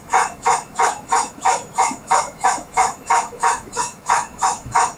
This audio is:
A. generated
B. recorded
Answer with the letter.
A